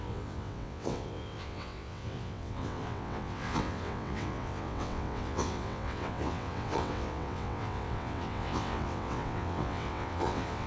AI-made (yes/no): yes